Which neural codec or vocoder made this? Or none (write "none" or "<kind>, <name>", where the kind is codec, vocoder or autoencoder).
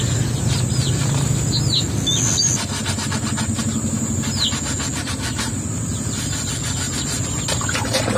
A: none